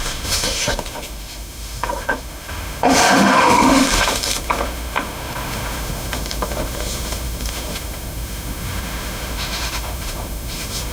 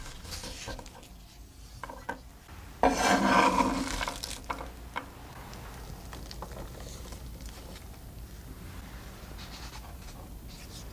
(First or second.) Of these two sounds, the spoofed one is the first